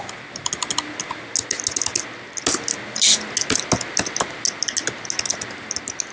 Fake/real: real